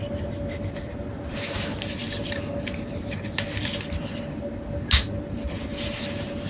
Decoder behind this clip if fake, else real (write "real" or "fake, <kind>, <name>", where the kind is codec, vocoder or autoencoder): real